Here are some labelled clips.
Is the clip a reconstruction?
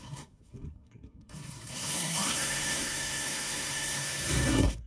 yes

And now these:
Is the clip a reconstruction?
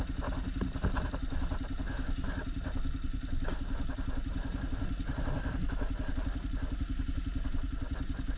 no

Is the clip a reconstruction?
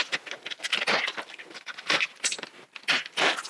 no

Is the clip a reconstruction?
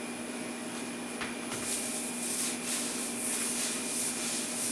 no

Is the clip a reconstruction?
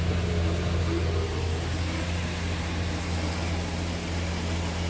no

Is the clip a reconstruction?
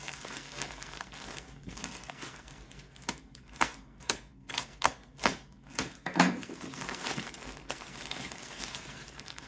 yes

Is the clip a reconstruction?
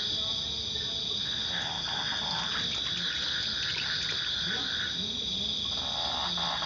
no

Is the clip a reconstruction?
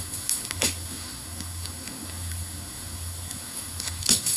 yes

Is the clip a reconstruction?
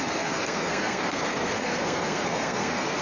yes